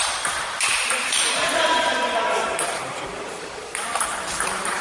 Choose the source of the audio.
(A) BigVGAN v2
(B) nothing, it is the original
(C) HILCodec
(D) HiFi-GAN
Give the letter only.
A